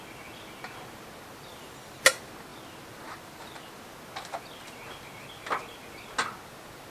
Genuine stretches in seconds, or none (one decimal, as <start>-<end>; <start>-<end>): 0.0-1.5; 2.0-6.9